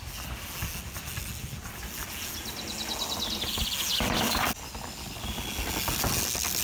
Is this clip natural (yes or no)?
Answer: yes